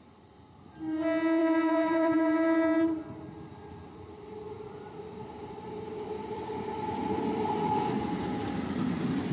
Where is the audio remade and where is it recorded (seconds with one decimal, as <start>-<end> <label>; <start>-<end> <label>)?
0.0-1.4 recorded; 1.4-2.2 remade; 2.2-3.5 recorded; 3.5-7.7 remade; 7.7-9.3 recorded